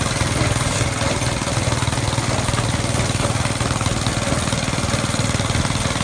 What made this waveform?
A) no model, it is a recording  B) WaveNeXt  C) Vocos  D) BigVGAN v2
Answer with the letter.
A